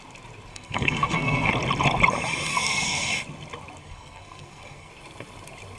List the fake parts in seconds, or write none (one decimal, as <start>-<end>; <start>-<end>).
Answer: 0.5-1.5; 2.5-3.1; 3.8-4.9